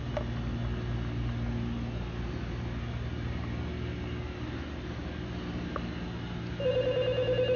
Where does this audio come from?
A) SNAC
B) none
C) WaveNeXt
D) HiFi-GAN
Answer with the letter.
B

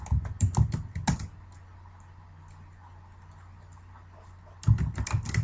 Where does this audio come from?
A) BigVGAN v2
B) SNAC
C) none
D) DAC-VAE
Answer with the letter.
C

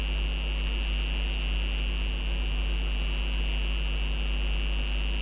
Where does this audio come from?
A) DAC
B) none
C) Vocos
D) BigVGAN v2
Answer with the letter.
B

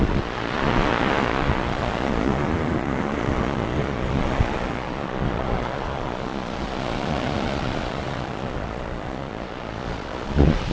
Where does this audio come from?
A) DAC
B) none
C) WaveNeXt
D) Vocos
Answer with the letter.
D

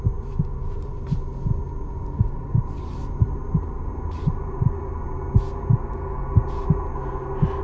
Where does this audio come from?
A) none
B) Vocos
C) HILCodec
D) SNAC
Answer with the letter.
A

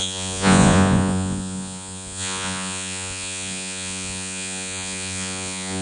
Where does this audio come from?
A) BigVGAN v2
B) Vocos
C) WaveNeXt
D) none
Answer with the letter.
B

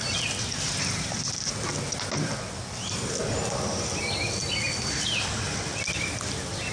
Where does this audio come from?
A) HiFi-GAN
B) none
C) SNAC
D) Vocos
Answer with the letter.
B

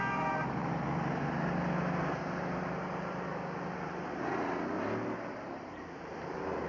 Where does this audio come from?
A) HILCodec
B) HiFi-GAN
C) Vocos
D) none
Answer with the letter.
D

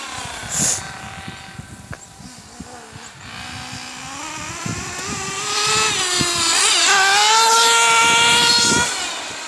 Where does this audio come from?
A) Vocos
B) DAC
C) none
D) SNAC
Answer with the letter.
C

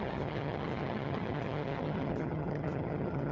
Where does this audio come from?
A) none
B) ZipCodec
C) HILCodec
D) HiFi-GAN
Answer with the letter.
D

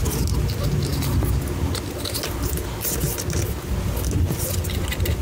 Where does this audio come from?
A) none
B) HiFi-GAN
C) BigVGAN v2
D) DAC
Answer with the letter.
A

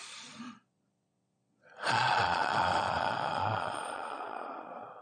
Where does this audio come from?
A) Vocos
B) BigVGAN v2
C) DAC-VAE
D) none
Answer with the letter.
A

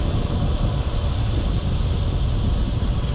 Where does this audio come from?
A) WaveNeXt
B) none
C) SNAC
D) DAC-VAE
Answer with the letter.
B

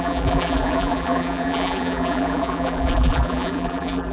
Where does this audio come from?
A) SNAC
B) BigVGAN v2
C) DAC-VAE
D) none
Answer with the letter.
B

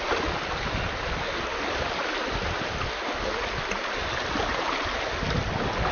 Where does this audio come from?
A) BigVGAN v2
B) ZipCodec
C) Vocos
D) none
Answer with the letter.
D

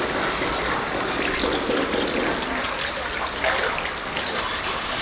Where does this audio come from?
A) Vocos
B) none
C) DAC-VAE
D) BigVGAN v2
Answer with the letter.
B